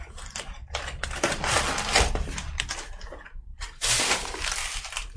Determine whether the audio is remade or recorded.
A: recorded